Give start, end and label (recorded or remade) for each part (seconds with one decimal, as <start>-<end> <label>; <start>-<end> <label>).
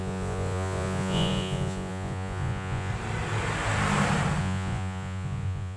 0.0-2.9 remade; 2.9-4.4 recorded; 4.4-5.8 remade